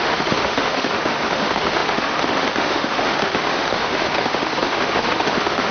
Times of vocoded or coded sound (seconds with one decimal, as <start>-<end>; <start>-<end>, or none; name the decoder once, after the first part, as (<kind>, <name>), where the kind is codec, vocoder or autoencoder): 0.0-5.7 (autoencoder, DAC-VAE)